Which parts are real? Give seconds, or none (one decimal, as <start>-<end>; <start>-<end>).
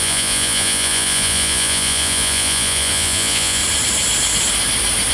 3.6-5.1